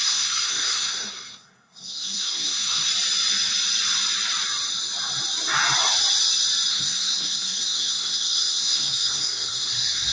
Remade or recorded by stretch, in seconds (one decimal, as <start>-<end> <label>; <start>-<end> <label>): 0.0-2.9 remade; 2.9-6.7 recorded; 6.7-10.1 remade